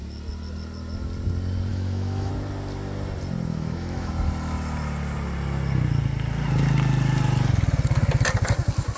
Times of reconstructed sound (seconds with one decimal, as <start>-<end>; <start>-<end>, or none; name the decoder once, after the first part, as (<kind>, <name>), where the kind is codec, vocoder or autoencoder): 1.7-2.3 (autoencoder, DAC-VAE); 3.5-4.1